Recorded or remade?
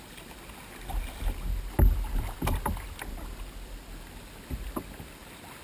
recorded